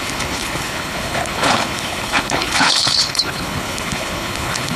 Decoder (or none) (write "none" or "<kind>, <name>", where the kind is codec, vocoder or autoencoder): codec, HILCodec